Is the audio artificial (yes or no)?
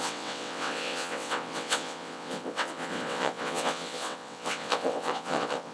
yes